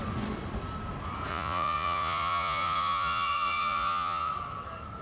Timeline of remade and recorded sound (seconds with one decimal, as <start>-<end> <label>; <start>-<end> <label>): 0.0-1.3 recorded; 1.3-4.3 remade; 4.3-5.0 recorded